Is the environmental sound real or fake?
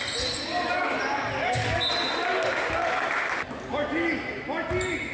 real